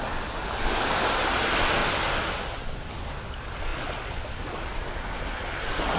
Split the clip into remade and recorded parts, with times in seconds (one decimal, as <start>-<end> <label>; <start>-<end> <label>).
0.0-6.0 recorded

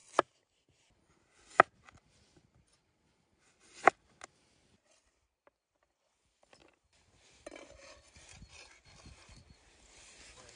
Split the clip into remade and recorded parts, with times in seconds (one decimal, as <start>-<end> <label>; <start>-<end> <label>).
0.0-10.6 recorded

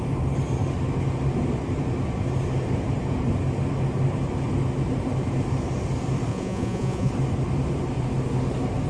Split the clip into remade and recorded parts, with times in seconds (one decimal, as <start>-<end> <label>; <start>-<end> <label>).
0.0-6.3 recorded; 6.3-7.1 remade; 7.1-8.9 recorded

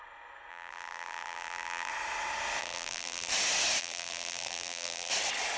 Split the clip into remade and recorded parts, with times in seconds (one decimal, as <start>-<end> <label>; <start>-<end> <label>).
0.0-0.5 recorded; 0.5-1.9 remade; 1.9-2.6 recorded; 2.6-3.3 remade; 3.3-3.8 recorded; 3.8-5.1 remade; 5.1-5.6 recorded

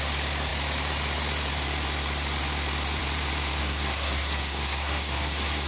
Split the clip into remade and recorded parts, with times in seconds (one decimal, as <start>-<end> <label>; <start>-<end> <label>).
0.0-3.6 recorded; 3.6-5.7 remade